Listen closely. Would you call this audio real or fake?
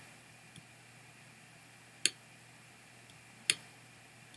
real